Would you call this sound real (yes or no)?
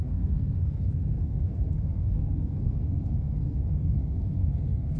no